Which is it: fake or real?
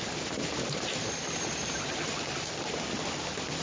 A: real